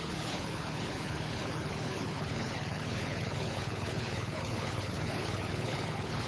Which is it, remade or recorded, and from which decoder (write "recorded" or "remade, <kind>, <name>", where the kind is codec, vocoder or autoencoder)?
remade, codec, HILCodec